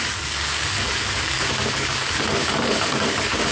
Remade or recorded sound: remade